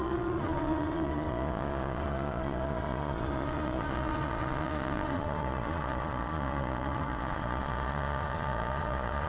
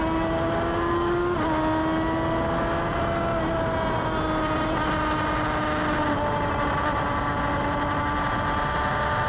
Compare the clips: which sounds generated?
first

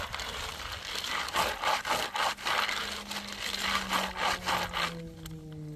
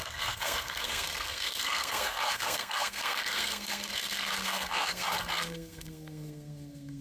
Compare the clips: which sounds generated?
second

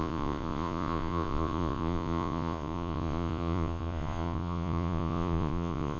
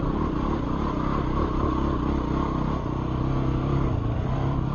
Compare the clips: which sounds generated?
first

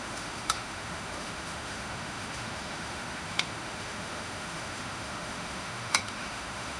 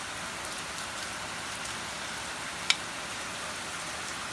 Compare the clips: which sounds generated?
first